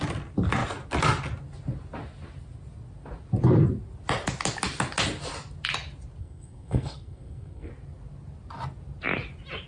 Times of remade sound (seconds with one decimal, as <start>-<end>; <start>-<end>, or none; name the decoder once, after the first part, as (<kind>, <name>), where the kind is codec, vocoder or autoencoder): 6.2-7.7 (codec, SNAC)